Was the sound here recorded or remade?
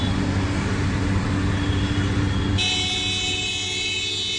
recorded